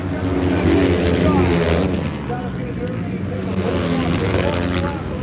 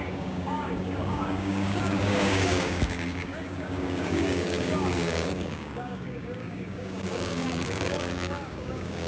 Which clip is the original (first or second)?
first